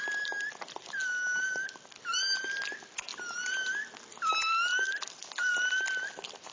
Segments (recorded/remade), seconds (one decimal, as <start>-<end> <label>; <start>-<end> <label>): 0.0-4.7 recorded; 4.7-5.7 remade; 5.7-6.5 recorded